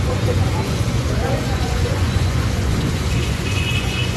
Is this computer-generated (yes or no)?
yes